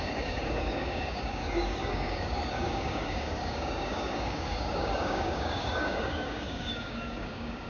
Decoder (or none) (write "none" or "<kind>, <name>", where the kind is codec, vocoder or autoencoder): codec, DAC